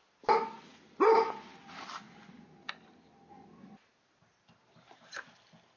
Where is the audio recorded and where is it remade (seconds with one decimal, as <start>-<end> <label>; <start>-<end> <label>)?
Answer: 0.0-5.8 recorded